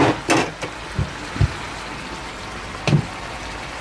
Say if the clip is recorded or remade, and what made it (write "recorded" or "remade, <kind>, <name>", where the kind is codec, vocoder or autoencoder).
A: recorded